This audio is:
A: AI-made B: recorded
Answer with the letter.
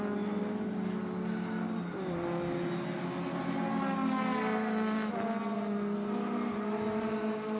B